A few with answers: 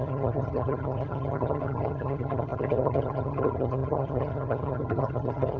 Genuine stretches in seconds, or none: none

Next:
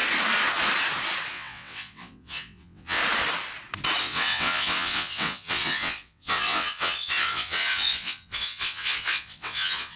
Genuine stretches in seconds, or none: 0.0-1.3; 3.0-4.0

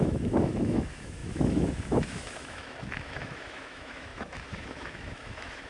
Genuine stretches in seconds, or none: none

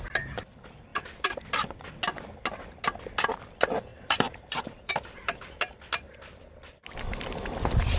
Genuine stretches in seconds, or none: 0.0-3.9; 5.4-8.0

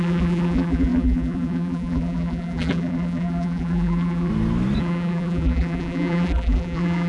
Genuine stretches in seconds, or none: 4.3-4.8

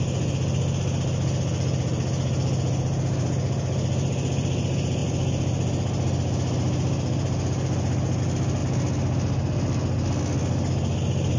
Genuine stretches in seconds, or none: 0.0-11.4

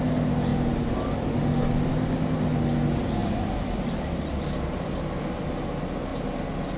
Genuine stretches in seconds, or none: 0.0-3.2; 5.2-6.1